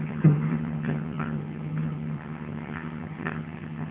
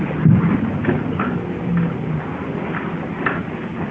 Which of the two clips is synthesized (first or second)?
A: first